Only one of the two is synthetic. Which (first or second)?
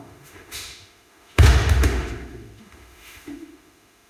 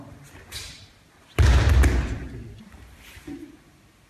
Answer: first